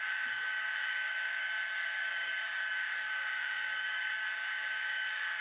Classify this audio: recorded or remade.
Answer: remade